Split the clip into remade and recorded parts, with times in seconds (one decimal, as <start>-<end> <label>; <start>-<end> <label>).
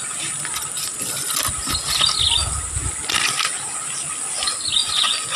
0.0-4.8 recorded; 4.8-5.4 remade